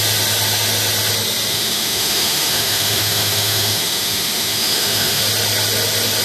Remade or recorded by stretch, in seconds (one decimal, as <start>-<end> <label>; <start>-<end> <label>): 0.0-1.5 recorded; 1.5-5.2 remade; 5.2-6.2 recorded